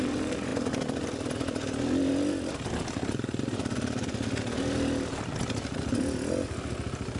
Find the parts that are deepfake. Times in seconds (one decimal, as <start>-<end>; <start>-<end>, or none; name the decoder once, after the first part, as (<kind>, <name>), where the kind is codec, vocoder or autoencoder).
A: none